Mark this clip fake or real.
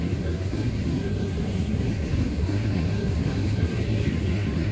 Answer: fake